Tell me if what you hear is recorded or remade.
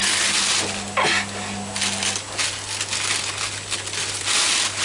recorded